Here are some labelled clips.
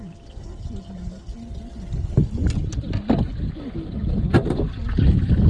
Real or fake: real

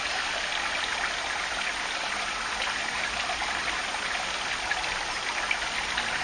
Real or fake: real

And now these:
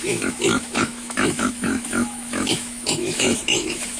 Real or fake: fake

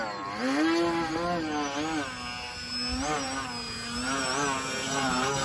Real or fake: real